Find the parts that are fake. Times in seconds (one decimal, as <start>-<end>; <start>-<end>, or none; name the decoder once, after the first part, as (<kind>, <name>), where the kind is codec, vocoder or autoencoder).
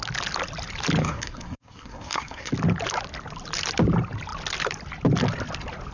1.0-2.5 (codec, SNAC)